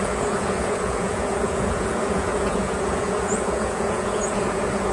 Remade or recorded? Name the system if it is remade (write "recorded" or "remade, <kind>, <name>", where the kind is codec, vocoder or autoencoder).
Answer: remade, vocoder, Vocos